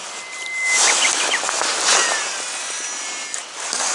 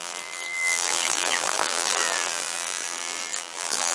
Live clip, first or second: first